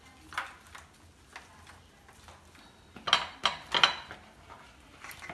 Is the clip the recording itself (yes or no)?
yes